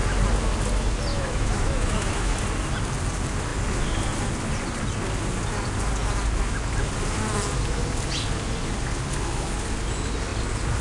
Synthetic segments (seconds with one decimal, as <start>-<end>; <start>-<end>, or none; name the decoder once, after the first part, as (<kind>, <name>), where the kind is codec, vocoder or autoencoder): 1.1-2.4 (autoencoder, DAC-VAE)